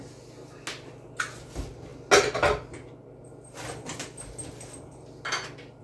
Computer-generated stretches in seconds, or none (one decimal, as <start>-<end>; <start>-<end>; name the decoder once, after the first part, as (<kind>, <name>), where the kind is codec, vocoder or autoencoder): none

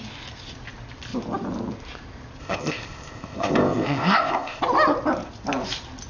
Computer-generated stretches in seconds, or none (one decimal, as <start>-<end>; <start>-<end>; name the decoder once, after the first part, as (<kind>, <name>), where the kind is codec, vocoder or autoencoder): 2.4-4.6 (codec, ZipCodec)

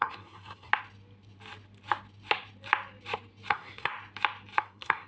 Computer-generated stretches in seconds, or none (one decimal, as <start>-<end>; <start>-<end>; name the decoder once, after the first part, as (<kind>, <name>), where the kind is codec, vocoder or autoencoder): 0.0-0.7 (codec, SNAC); 3.5-3.9; 4.6-5.1

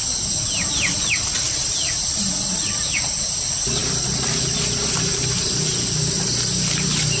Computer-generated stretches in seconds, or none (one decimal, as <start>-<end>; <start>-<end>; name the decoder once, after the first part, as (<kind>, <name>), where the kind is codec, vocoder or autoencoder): none

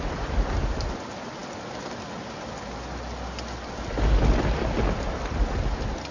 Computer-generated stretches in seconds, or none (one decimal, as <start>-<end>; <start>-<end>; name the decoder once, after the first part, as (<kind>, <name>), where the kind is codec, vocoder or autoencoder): none